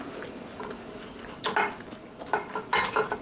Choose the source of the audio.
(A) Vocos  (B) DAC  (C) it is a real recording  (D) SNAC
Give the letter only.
C